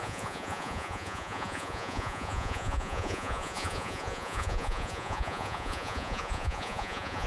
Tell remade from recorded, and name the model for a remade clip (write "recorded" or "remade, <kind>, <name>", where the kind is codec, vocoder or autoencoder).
remade, vocoder, Vocos